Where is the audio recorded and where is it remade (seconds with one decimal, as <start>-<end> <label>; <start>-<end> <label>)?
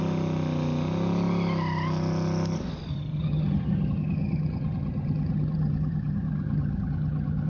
0.0-2.9 recorded; 2.9-7.5 remade